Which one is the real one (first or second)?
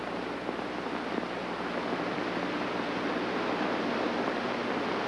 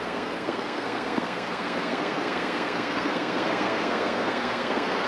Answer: first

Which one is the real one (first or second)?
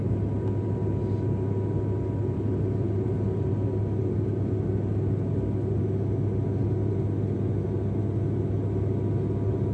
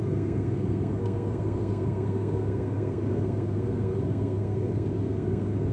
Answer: first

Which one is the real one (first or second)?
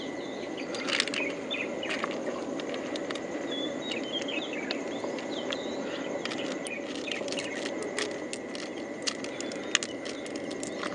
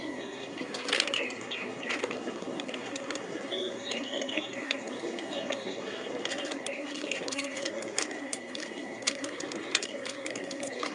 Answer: first